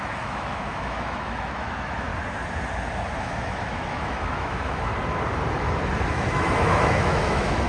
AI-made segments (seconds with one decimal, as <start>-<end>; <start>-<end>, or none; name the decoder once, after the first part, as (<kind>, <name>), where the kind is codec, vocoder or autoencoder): 0.0-2.1 (autoencoder, DAC-VAE); 3.2-4.9; 6.1-7.7